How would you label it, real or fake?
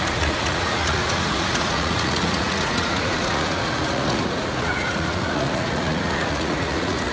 fake